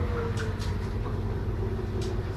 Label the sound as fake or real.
real